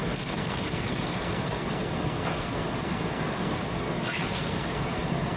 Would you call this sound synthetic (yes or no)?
yes